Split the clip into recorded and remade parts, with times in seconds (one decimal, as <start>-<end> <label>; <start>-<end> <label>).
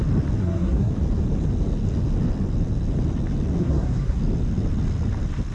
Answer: 0.0-0.4 recorded; 0.4-0.9 remade; 0.9-3.6 recorded; 3.6-4.2 remade; 4.2-5.5 recorded